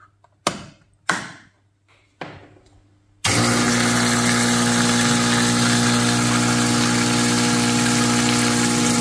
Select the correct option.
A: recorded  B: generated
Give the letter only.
A